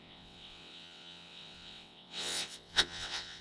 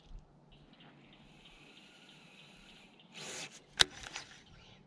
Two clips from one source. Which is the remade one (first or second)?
first